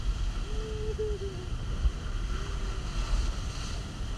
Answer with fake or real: real